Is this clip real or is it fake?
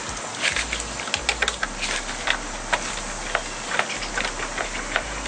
real